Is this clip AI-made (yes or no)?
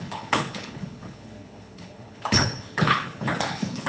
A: yes